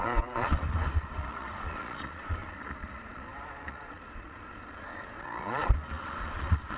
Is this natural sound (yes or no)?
no